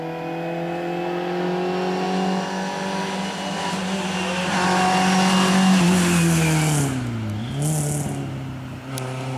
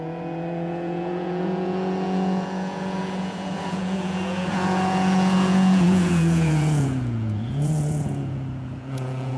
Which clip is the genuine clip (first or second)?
first